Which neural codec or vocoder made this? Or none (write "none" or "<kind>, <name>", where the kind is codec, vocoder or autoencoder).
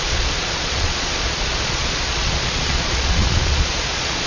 vocoder, Vocos